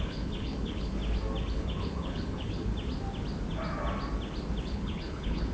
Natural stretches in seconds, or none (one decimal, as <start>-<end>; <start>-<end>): 1.0-1.5; 2.7-4.6